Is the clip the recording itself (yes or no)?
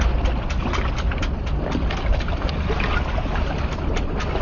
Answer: yes